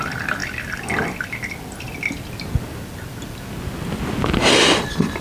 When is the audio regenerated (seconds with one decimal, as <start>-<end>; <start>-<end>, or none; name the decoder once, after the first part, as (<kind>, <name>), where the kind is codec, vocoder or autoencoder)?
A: none

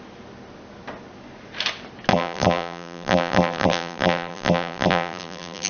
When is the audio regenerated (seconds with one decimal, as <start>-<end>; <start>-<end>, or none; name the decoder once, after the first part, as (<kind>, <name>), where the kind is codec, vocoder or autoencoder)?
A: 2.1-5.7 (vocoder, BigVGAN v2)

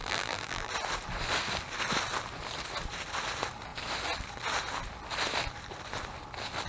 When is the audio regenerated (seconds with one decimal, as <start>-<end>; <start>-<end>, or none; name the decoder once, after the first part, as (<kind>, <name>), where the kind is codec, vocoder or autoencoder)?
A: 0.0-0.7 (vocoder, BigVGAN v2)

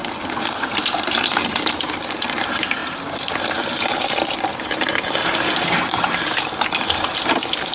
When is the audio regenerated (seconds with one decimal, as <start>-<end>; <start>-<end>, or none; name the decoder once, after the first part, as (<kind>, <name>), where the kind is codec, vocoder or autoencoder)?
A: 0.0-1.7 (vocoder, BigVGAN v2); 2.8-3.6; 4.5-6.2

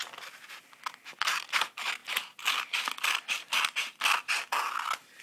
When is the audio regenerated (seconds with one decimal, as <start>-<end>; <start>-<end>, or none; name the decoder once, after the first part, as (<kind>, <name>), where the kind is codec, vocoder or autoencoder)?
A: none

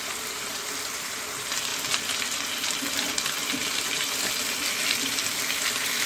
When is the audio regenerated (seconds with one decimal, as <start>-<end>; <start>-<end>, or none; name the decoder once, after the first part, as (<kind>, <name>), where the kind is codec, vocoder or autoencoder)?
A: 3.4-4.3 (vocoder, BigVGAN v2)

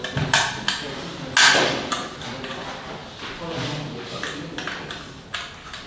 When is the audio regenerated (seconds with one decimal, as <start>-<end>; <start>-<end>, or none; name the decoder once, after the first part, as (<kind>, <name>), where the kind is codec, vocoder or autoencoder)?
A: none

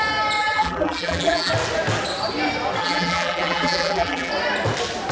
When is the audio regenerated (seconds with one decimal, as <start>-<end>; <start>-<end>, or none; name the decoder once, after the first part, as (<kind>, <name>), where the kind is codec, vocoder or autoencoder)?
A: 0.4-1.5 (vocoder, BigVGAN v2); 2.8-4.3